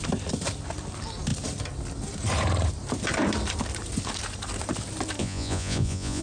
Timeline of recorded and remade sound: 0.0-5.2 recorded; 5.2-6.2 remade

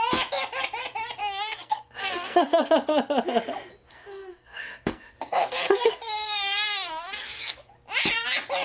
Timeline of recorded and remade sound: 0.0-1.2 recorded; 1.2-2.7 remade; 2.7-3.9 recorded; 3.9-7.7 remade; 7.7-8.6 recorded

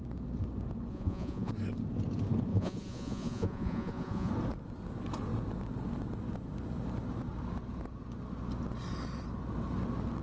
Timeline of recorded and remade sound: 0.0-0.9 recorded; 0.9-1.5 remade; 1.5-2.5 recorded; 2.5-4.3 remade; 4.3-10.2 recorded

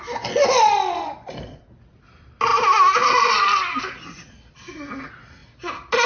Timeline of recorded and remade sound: 0.0-1.0 recorded; 1.0-1.6 remade; 1.6-6.1 recorded